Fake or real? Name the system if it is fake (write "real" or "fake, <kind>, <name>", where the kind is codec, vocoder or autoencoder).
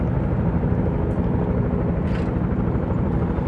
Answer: real